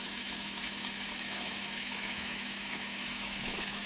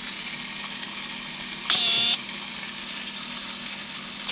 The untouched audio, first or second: second